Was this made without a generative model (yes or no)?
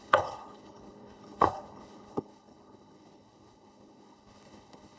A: no